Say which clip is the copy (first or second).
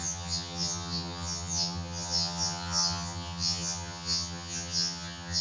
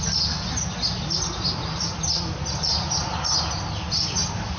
first